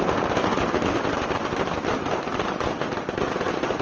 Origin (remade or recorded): recorded